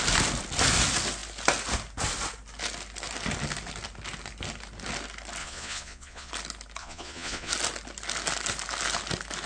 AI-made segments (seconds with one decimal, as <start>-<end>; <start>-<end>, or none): 5.4-6.3; 6.8-7.5